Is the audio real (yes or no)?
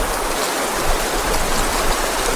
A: yes